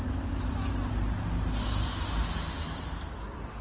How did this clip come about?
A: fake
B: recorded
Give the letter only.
B